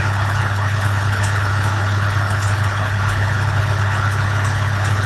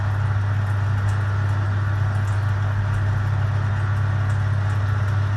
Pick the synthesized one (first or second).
first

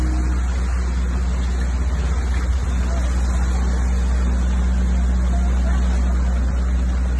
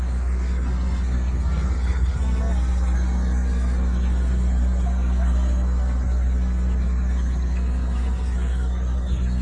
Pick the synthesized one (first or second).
second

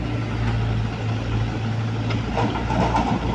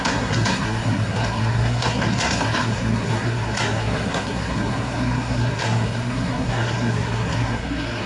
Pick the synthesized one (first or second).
second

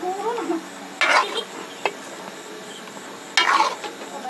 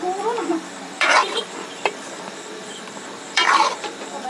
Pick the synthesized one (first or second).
second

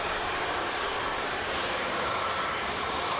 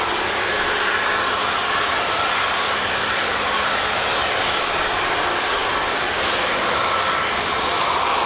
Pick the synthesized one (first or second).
first